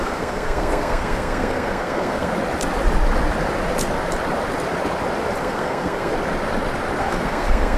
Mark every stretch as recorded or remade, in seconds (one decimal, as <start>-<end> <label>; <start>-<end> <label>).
0.0-2.3 remade; 2.3-5.4 recorded; 5.4-6.1 remade; 6.1-7.0 recorded; 7.0-7.8 remade